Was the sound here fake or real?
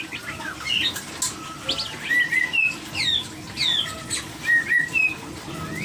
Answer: real